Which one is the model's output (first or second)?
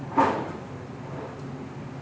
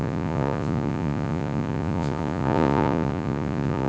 second